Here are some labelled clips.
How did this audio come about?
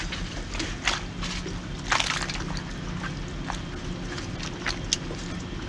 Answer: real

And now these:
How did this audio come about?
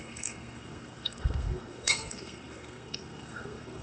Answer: fake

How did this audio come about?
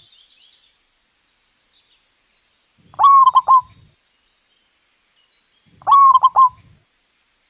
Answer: real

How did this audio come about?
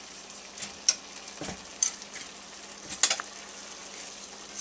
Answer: real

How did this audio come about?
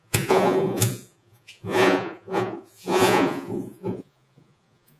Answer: fake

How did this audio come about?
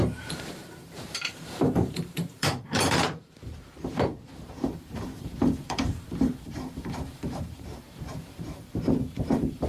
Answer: fake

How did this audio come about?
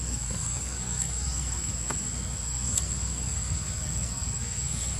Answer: fake